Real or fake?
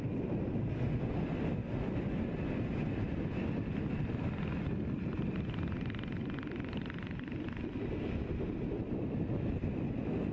real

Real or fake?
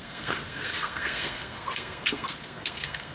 fake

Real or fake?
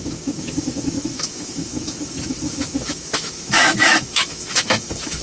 fake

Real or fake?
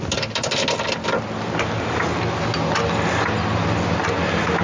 real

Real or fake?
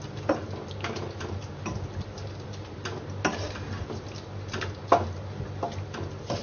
real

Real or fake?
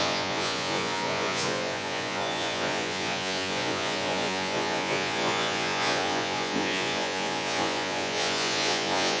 fake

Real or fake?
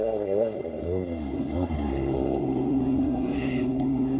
fake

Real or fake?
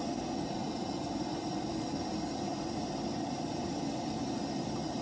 real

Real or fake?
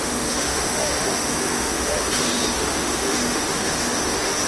fake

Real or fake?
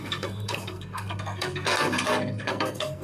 fake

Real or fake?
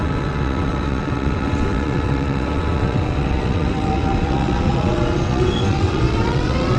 fake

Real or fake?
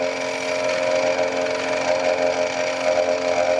real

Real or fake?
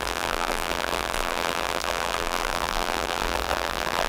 fake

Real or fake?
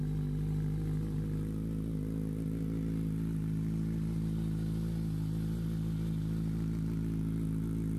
real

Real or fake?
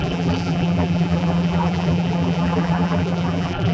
fake